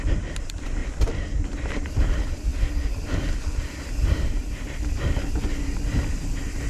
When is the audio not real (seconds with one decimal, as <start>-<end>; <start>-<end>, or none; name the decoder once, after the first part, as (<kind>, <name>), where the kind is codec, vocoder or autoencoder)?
0.0-0.8 (vocoder, BigVGAN v2); 1.4-2.5; 6.3-6.7